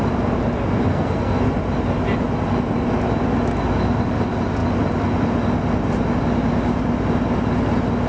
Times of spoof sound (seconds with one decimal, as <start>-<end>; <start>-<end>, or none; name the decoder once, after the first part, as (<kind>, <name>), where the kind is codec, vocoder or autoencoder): 0.9-1.4 (codec, SNAC)